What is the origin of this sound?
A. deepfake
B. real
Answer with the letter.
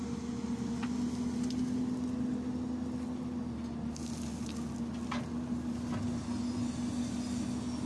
B